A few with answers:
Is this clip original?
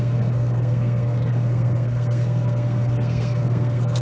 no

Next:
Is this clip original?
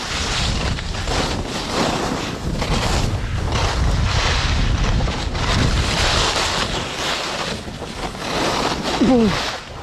yes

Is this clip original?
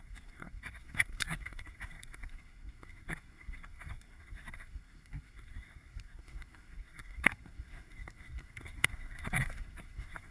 no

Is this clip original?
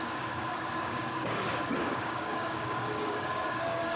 no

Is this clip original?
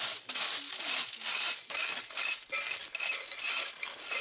yes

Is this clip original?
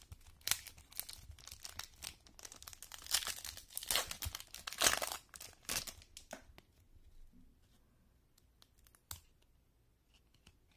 yes